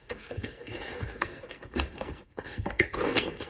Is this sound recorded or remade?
remade